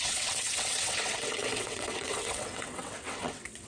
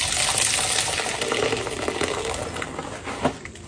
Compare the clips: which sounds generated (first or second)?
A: first